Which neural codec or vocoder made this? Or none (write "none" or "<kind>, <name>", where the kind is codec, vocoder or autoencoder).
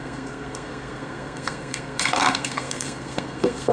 codec, SNAC